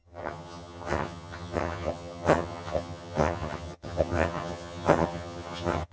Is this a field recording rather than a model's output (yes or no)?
no